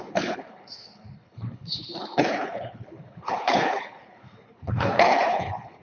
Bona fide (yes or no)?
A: no